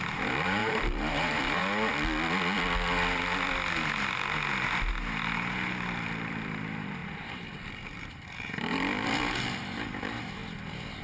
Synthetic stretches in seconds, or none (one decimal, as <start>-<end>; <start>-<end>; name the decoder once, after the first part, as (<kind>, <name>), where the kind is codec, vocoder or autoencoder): 0.0-1.6 (vocoder, BigVGAN v2); 6.3-10.4